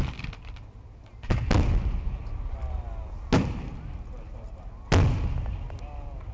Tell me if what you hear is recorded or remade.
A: recorded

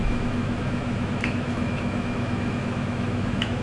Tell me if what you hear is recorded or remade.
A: remade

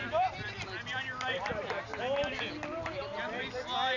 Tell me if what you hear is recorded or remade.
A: recorded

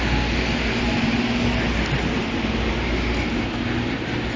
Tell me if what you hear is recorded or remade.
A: recorded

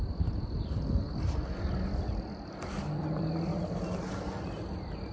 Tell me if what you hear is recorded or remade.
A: recorded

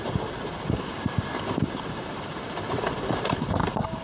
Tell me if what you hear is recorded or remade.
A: remade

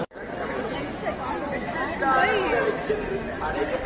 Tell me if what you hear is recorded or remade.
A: recorded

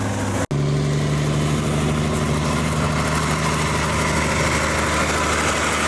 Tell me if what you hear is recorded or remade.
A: recorded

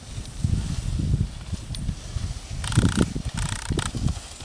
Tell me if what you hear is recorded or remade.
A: recorded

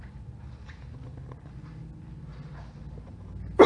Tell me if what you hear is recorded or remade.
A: recorded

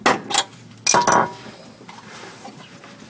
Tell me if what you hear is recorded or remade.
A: recorded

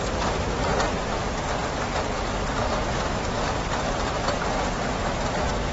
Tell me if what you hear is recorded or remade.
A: recorded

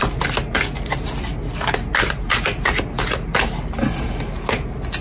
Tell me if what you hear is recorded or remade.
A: recorded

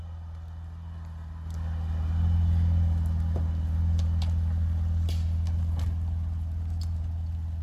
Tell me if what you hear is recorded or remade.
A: recorded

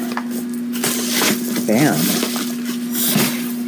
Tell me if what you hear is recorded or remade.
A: recorded